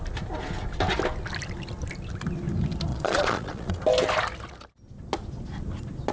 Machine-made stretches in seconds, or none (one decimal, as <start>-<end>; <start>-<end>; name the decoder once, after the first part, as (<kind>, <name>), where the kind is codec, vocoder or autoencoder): 2.9-3.7 (vocoder, Vocos)